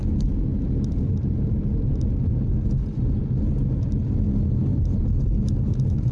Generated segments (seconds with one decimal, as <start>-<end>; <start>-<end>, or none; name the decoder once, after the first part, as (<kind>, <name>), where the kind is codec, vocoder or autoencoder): none